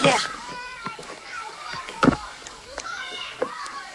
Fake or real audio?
fake